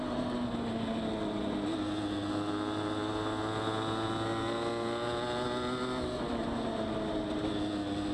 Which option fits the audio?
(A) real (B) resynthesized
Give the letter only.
A